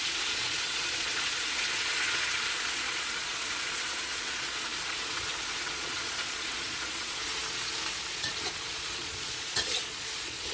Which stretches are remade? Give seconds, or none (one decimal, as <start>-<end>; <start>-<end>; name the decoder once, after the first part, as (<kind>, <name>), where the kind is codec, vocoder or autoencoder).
0.0-7.4 (vocoder, Vocos); 8.1-10.5